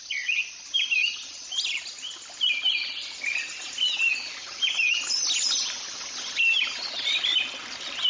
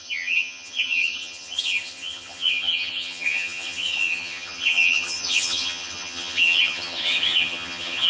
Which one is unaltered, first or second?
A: first